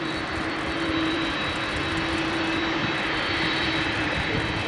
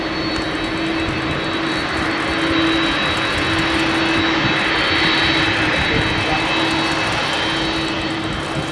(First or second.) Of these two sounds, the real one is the second